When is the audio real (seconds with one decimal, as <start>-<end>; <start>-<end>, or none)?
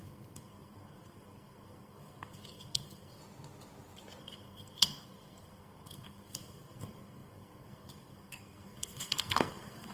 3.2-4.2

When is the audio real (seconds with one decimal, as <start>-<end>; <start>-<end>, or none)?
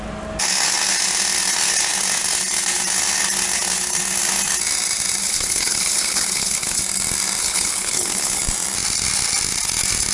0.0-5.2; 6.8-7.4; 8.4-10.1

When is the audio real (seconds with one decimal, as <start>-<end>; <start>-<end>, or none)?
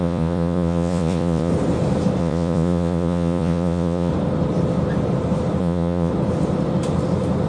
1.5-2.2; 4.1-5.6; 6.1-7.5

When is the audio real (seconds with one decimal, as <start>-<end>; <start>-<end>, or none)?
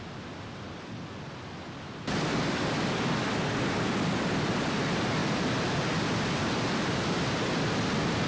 0.0-8.3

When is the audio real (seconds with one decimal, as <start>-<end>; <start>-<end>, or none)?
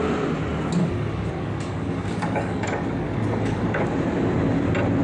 0.0-0.8; 3.8-5.0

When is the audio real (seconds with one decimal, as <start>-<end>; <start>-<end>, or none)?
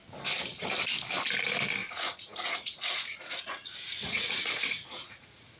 0.0-1.8